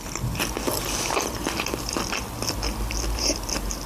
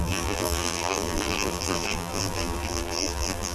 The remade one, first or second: second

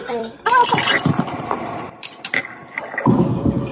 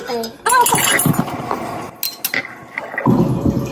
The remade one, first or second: first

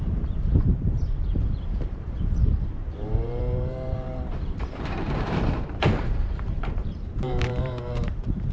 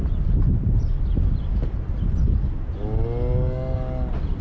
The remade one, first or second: first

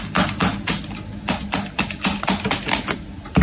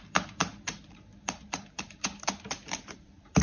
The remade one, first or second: second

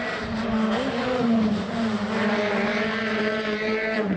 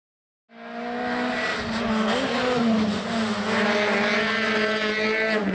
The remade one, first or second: first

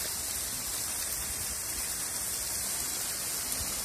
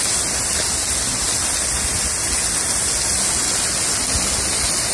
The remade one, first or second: first